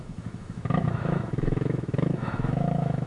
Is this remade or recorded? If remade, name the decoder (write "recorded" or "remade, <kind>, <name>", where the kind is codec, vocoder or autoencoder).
remade, autoencoder, DAC-VAE